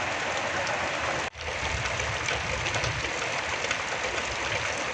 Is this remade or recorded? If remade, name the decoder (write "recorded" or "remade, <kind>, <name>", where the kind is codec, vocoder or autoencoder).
recorded